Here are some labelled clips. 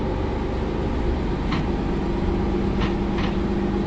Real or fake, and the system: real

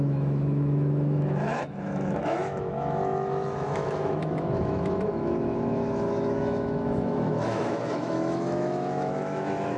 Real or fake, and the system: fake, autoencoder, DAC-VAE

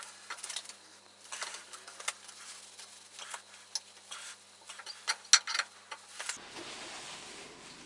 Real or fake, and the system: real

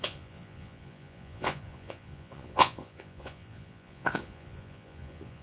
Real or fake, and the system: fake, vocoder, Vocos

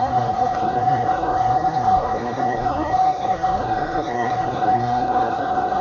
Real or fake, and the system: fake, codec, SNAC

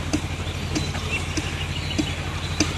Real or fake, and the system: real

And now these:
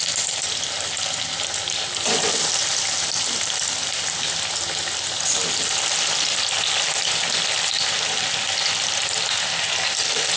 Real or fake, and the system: real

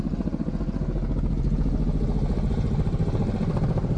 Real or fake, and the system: real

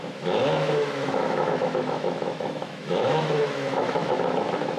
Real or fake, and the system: fake, autoencoder, DAC-VAE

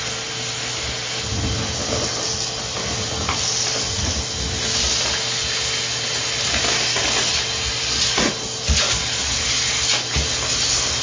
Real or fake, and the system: real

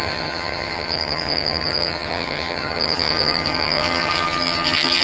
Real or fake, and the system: fake, vocoder, HiFi-GAN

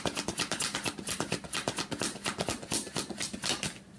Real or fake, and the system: real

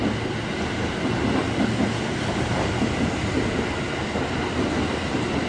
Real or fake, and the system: real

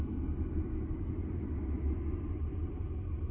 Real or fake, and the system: real